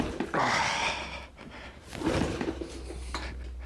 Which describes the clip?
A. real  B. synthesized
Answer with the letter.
A